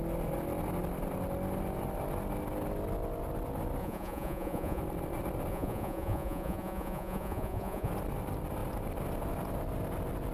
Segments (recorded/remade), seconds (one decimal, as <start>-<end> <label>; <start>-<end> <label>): 0.0-3.8 recorded; 3.8-4.8 remade; 4.8-5.5 recorded; 5.5-7.9 remade; 7.9-10.3 recorded